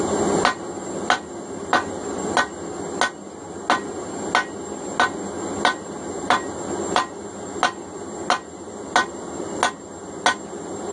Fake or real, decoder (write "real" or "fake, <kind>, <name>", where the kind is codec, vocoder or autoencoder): real